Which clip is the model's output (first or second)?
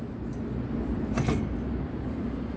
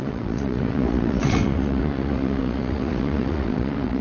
second